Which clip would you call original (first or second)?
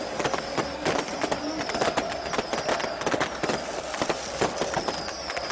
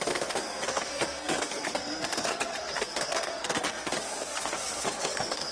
first